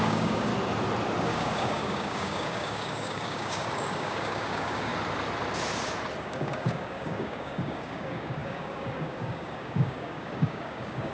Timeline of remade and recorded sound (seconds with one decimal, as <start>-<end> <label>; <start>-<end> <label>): 0.0-0.5 remade; 0.5-1.2 recorded; 1.2-4.9 remade; 4.9-6.2 recorded; 6.2-11.1 remade